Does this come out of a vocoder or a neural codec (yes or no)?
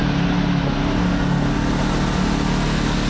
no